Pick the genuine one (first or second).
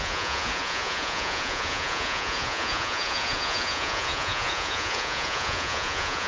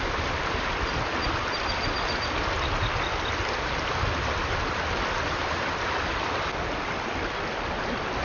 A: second